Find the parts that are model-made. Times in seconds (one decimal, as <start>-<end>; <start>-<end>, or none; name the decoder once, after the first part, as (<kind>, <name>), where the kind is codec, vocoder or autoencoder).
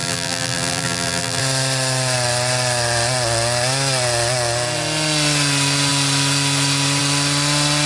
0.0-1.4 (vocoder, BigVGAN v2)